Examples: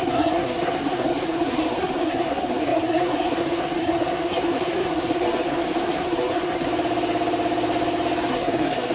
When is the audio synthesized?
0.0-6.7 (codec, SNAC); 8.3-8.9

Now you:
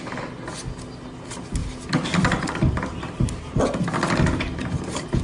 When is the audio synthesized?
1.6-3.6 (vocoder, BigVGAN v2)